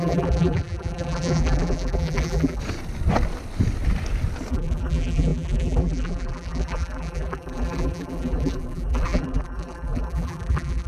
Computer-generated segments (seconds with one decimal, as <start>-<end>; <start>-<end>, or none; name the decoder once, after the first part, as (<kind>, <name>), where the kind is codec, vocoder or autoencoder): 0.0-2.6 (vocoder, BigVGAN v2); 4.5-10.9